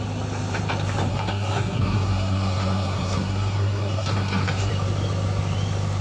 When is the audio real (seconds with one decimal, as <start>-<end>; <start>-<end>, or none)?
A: 0.0-1.1; 4.7-6.0